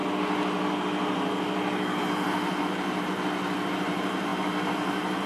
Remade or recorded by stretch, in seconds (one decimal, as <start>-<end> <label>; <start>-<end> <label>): 0.0-2.6 recorded; 2.6-5.3 remade